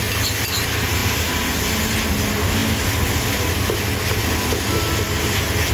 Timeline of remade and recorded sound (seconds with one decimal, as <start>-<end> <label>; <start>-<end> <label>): 0.0-5.7 recorded